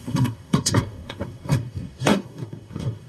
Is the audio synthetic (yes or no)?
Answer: yes